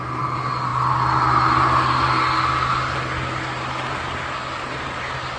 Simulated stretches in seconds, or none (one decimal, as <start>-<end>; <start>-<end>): none